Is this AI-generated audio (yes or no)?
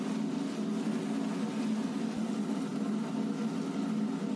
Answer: no